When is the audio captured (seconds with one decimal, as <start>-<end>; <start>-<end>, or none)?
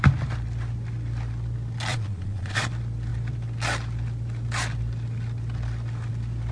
0.0-1.9; 2.7-6.5